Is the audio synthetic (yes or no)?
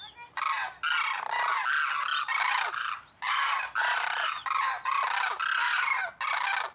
no